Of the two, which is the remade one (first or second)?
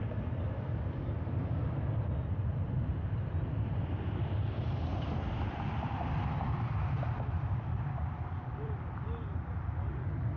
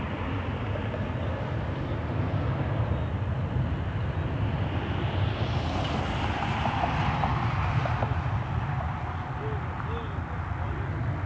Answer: first